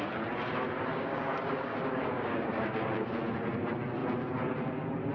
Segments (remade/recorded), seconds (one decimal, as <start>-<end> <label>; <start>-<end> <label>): 0.0-0.9 recorded; 0.9-3.1 remade; 3.1-5.1 recorded